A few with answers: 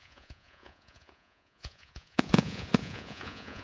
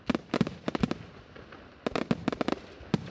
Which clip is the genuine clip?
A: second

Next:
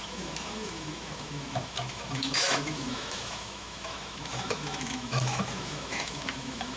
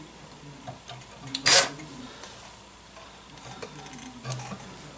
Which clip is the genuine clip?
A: second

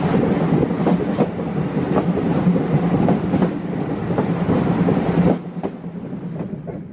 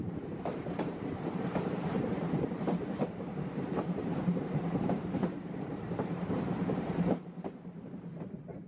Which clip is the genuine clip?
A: first